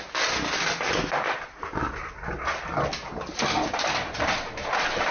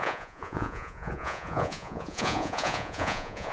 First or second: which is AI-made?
second